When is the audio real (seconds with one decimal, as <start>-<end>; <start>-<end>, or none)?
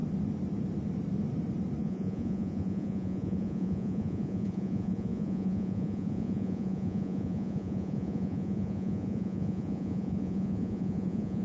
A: 0.0-1.8